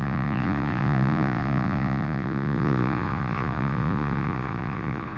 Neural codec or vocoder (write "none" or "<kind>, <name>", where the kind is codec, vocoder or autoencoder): vocoder, Vocos